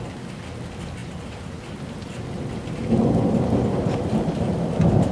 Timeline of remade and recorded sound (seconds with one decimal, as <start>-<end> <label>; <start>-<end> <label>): 0.0-1.0 recorded; 1.0-1.6 remade; 1.6-5.1 recorded